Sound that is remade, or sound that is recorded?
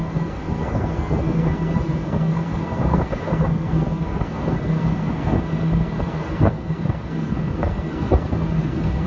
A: remade